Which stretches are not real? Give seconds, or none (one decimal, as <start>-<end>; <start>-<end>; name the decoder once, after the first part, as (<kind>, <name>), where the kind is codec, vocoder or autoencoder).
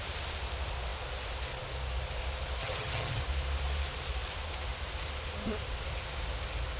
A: 2.6-3.2 (vocoder, HiFi-GAN)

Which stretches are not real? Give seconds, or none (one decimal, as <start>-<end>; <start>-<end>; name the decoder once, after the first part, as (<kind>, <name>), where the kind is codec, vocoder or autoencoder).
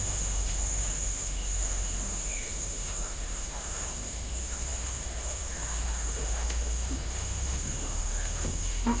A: 0.0-9.0 (autoencoder, DAC-VAE)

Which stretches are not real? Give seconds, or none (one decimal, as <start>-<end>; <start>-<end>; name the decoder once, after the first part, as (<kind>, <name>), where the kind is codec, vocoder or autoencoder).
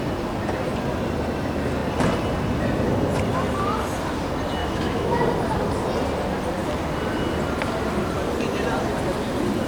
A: 4.6-5.2 (autoencoder, DAC-VAE)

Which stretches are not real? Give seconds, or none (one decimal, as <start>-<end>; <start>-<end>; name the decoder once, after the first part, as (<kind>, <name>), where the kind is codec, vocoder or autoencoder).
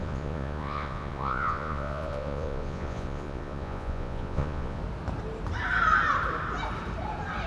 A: 0.0-4.8 (vocoder, Vocos)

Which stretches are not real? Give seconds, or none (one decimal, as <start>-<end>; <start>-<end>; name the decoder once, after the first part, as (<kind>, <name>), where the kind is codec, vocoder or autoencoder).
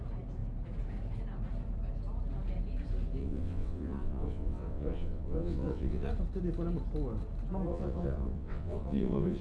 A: 3.2-6.1 (vocoder, WaveNeXt); 7.7-9.4